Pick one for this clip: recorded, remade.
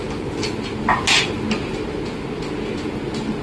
recorded